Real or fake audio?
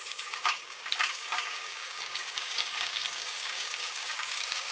fake